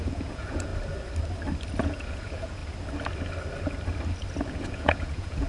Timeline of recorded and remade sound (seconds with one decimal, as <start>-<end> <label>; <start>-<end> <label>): 0.0-0.7 remade; 0.7-1.8 recorded; 1.8-2.6 remade; 2.6-4.5 recorded; 4.5-5.5 remade